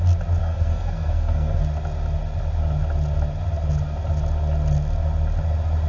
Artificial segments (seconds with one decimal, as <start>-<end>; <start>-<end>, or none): 0.4-1.6